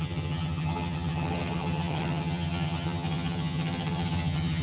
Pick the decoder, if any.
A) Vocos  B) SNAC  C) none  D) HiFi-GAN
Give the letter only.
D